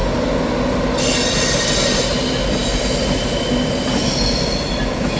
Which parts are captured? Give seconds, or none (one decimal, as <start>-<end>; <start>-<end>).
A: 0.0-5.2